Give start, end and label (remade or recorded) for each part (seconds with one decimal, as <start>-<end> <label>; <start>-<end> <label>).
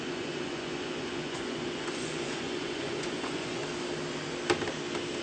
0.0-3.6 remade; 3.6-5.2 recorded